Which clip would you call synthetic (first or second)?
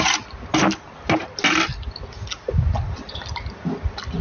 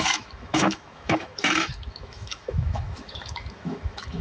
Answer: second